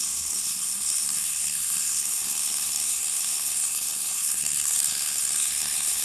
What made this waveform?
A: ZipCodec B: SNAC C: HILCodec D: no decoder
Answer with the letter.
B